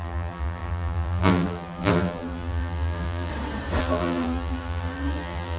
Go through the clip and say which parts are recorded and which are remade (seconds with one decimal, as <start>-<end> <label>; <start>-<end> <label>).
0.0-3.3 remade; 3.3-3.8 recorded; 3.8-5.6 remade